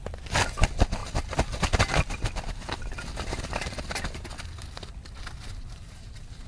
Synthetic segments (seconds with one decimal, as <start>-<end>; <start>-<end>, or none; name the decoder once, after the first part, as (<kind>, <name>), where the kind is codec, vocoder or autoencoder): none